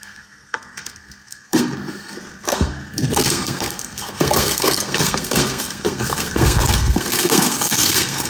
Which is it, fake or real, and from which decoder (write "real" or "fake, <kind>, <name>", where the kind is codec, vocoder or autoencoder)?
fake, codec, SNAC